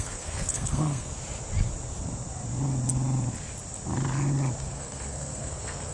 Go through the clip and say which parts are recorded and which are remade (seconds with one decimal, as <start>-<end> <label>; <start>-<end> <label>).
0.0-1.1 remade; 1.1-4.6 recorded; 4.6-5.9 remade